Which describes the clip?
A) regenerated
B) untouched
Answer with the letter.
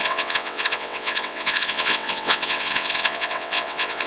A